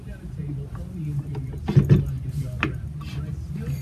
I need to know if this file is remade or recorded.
recorded